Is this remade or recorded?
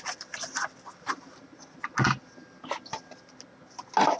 recorded